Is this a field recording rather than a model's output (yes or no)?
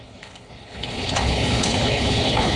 no